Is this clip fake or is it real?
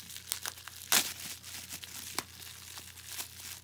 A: real